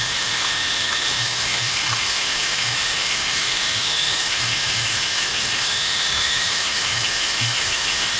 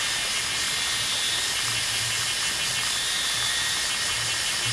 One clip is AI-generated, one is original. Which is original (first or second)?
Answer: second